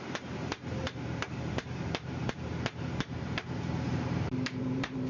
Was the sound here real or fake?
fake